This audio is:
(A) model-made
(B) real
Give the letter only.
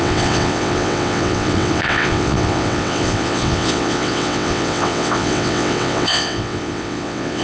A